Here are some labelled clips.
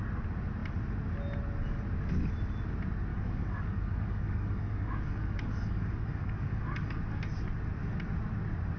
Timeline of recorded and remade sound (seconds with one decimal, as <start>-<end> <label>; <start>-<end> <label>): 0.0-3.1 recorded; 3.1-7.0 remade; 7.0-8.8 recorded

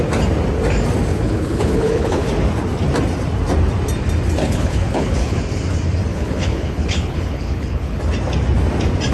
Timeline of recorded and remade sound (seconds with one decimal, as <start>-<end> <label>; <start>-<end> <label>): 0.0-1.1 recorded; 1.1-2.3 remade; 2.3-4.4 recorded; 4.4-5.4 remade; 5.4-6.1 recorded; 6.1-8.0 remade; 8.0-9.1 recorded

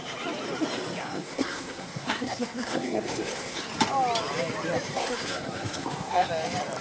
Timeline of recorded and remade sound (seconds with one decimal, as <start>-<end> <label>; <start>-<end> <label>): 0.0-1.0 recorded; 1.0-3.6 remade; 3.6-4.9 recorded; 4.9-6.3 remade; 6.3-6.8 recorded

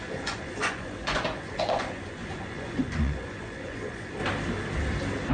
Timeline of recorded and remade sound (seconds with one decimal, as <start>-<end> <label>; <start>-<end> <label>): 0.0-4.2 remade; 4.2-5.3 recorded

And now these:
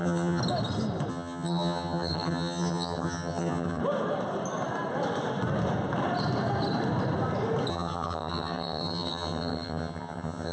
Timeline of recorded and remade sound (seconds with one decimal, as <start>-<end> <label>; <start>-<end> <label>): 0.0-0.4 remade; 0.4-1.1 recorded; 1.1-3.8 remade; 3.8-7.7 recorded; 7.7-10.5 remade

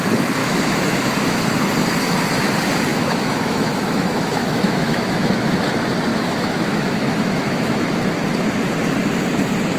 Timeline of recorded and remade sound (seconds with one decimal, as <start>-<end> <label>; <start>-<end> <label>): 0.0-0.4 recorded; 0.4-1.6 remade; 1.6-2.9 recorded; 2.9-5.3 remade; 5.3-6.1 recorded; 6.1-7.9 remade; 7.9-9.8 recorded

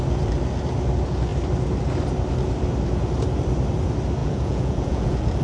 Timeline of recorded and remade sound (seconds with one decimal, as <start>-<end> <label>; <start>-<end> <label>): 0.0-4.2 recorded; 4.2-5.4 remade

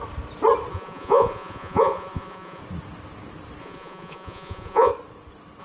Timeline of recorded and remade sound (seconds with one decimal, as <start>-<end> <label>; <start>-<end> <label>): 0.0-0.7 recorded; 0.7-2.6 remade; 2.6-3.6 recorded; 3.6-4.9 remade; 4.9-5.6 recorded